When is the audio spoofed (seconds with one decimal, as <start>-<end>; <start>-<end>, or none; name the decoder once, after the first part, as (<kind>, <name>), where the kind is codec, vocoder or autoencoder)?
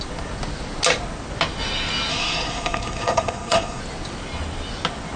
2.1-3.8 (codec, SNAC)